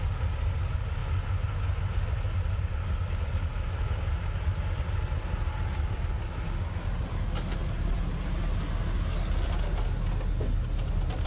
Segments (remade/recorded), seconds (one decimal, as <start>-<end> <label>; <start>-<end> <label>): 0.0-11.3 recorded